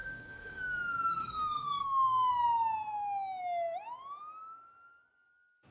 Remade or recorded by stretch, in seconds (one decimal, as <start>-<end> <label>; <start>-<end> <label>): 0.0-0.6 remade; 0.6-1.1 recorded; 1.1-2.3 remade; 2.3-5.7 recorded